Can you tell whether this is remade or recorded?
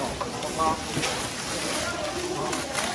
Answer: recorded